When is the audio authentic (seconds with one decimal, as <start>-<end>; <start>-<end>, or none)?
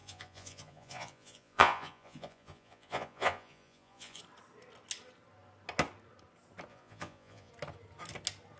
4.2-6.7; 7.5-8.6